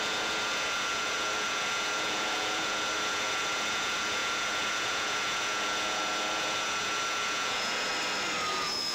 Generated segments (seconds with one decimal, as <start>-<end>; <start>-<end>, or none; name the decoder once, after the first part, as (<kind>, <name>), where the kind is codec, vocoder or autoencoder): 0.0-7.9 (vocoder, Vocos); 8.5-8.9